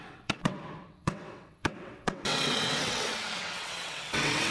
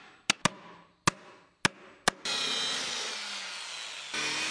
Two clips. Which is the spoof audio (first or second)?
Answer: first